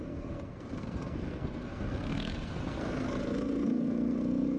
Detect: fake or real fake